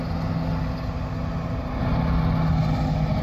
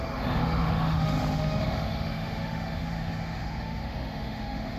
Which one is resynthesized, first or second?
second